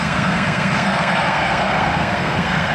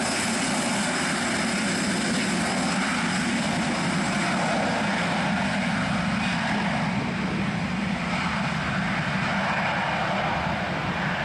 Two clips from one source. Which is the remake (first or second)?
first